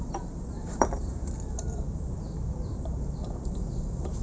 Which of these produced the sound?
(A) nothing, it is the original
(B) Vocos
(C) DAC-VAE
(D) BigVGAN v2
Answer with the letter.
D